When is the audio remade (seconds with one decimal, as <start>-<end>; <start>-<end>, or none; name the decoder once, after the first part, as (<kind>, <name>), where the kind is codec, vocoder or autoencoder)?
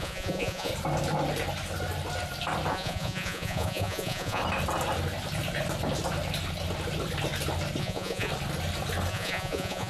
0.0-0.7 (vocoder, Vocos); 2.7-4.4; 7.8-8.3; 9.1-9.9